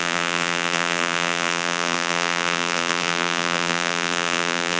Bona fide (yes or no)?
no